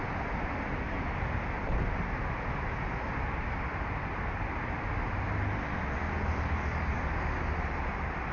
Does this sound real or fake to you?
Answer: real